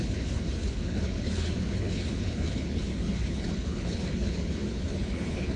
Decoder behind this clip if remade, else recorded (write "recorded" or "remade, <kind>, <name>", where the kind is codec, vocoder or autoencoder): remade, codec, HILCodec